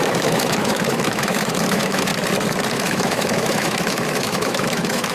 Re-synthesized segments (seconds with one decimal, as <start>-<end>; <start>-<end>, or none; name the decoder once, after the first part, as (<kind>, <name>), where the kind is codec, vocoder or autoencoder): 0.0-2.1 (autoencoder, DAC-VAE); 2.7-5.1